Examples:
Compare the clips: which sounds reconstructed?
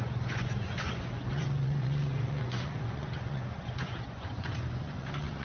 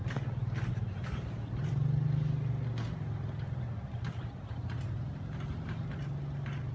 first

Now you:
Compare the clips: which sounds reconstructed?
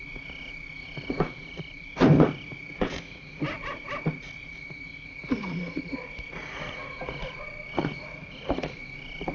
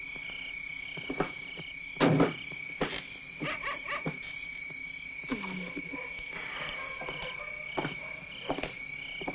first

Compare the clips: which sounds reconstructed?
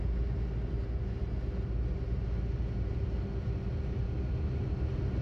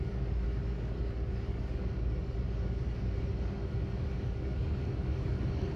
second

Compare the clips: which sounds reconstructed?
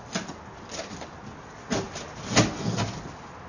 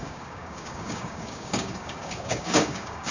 second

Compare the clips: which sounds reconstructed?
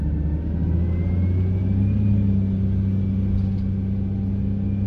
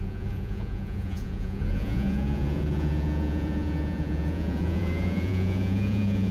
second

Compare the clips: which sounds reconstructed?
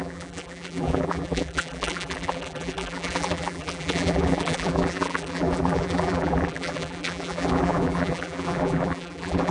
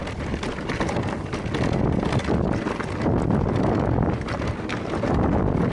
first